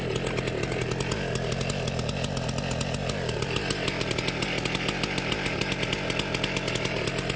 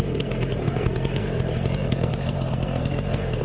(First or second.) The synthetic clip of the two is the second